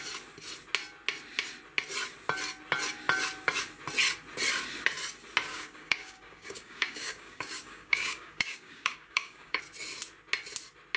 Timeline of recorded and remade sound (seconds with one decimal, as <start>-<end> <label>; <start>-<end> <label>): 0.0-5.5 recorded; 5.5-9.6 remade; 9.6-11.0 recorded